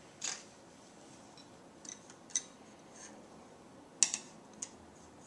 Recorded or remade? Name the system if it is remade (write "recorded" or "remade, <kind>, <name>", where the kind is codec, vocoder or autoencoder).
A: recorded